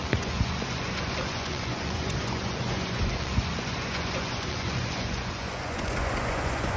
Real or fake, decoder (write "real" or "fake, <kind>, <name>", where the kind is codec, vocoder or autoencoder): fake, vocoder, Vocos